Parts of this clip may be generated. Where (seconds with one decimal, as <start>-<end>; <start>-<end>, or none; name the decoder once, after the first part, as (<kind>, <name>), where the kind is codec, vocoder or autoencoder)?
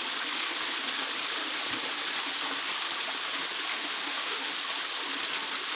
3.7-4.5 (autoencoder, DAC-VAE)